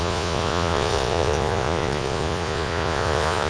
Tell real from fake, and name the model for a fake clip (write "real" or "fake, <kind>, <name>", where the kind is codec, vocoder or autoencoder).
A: fake, vocoder, Vocos